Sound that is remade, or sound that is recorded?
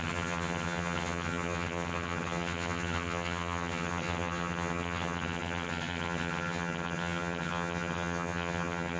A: remade